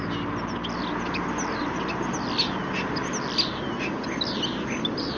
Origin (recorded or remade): recorded